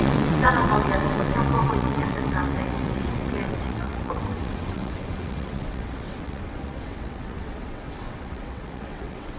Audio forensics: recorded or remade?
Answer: remade